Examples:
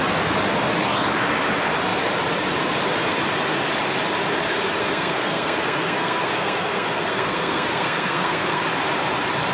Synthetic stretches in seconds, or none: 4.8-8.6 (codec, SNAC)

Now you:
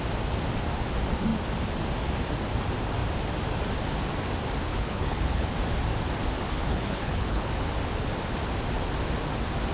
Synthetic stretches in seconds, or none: 4.7-5.5 (codec, HILCodec); 6.7-7.5

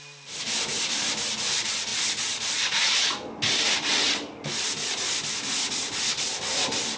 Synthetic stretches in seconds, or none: none

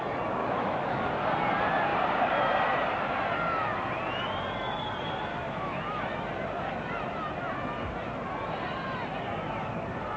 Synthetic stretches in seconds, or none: 0.4-1.1 (autoencoder, DAC-VAE); 5.3-6.0

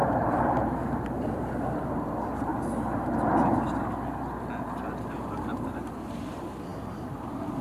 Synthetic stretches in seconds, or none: 0.0-2.5 (vocoder, BigVGAN v2); 5.0-7.6

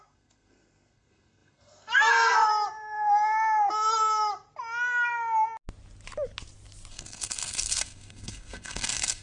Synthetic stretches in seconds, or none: 0.0-2.5 (codec, SNAC); 6.9-9.2

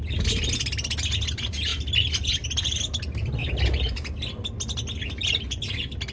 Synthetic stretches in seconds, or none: none